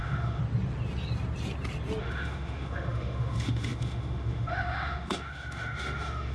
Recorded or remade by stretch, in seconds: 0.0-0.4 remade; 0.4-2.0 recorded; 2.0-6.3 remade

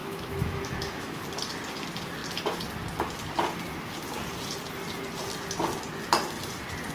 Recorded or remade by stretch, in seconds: 0.0-1.2 remade; 1.2-6.9 recorded

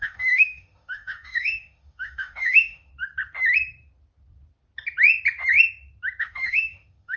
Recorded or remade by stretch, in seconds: 0.0-2.9 remade; 2.9-6.2 recorded; 6.2-7.2 remade

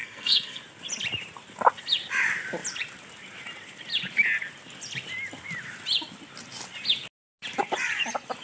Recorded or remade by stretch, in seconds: 0.0-0.6 remade; 0.6-8.4 recorded

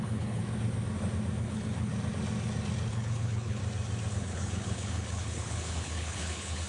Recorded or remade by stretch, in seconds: 0.0-0.4 remade; 0.4-1.4 recorded; 1.4-1.9 remade; 1.9-2.9 recorded; 2.9-3.6 remade; 3.6-4.1 recorded; 4.1-6.7 remade

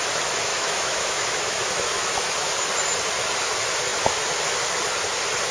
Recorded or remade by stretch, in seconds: 0.0-0.5 recorded; 0.5-2.3 remade; 2.3-5.5 recorded